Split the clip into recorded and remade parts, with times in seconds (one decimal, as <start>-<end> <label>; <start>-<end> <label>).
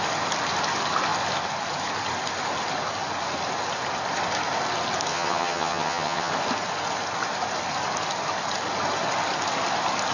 0.0-5.1 recorded; 5.1-6.3 remade; 6.3-10.1 recorded